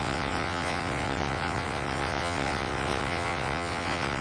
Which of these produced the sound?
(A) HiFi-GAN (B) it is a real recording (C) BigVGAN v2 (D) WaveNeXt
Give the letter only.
D